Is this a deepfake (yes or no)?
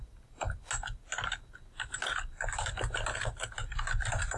no